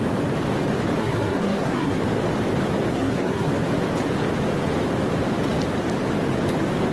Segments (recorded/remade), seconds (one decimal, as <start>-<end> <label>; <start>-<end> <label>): 0.0-1.0 recorded; 1.0-2.0 remade; 2.0-2.9 recorded; 2.9-3.5 remade; 3.5-6.9 recorded

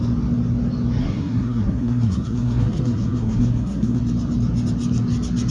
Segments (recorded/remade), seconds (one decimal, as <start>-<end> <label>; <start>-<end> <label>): 0.0-1.0 recorded; 1.0-4.0 remade; 4.0-5.5 recorded

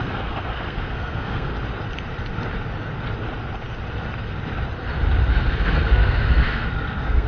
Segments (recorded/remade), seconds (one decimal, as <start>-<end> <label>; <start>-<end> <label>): 0.0-1.5 remade; 1.5-5.3 recorded; 5.3-7.3 remade

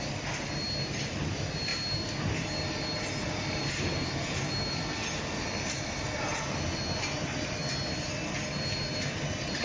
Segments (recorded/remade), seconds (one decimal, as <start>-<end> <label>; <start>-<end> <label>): 0.0-9.6 recorded

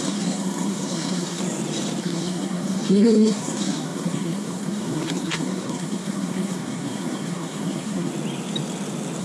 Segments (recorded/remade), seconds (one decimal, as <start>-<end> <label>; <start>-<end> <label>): 0.0-1.4 remade; 1.4-2.0 recorded; 2.0-8.1 remade; 8.1-9.2 recorded

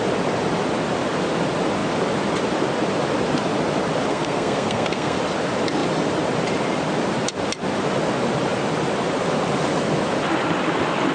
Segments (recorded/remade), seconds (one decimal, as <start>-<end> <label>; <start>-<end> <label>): 0.0-4.1 recorded; 4.1-5.2 remade; 5.2-11.1 recorded

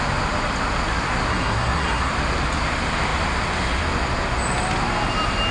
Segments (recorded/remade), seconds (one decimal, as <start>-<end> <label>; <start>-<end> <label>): 0.0-1.3 recorded; 1.3-2.1 remade; 2.1-5.5 recorded